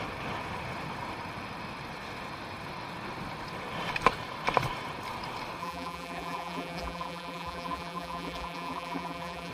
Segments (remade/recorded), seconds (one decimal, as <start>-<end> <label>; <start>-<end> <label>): 0.0-5.6 recorded; 5.6-9.5 remade